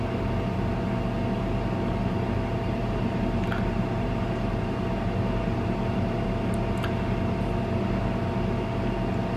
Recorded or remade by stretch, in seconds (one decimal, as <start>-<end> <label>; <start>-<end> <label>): 0.0-2.0 recorded; 2.0-6.6 remade; 6.6-9.4 recorded